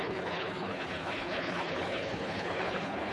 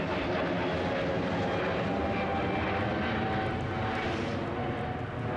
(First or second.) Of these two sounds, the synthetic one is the first